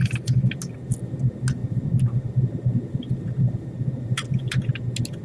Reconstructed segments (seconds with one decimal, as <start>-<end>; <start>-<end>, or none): none